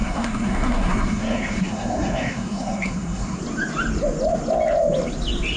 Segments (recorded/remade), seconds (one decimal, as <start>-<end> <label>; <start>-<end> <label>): 0.0-3.4 remade; 3.4-5.6 recorded